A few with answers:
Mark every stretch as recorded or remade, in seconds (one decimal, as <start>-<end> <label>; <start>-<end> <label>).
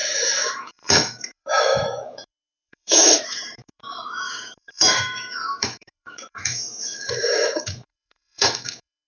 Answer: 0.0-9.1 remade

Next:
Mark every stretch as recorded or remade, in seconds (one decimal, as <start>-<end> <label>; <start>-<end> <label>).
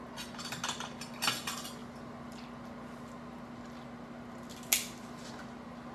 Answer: 0.0-5.9 recorded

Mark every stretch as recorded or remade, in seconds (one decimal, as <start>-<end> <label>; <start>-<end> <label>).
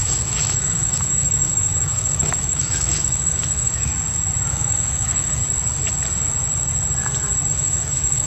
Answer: 0.0-3.9 remade; 3.9-4.5 recorded; 4.5-5.4 remade; 5.4-7.5 recorded; 7.5-8.3 remade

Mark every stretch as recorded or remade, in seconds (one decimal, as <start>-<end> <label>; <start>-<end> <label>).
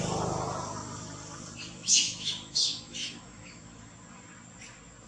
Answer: 0.0-1.8 recorded; 1.8-3.9 remade; 3.9-5.1 recorded